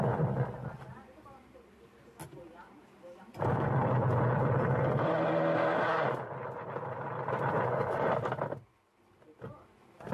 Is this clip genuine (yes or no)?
yes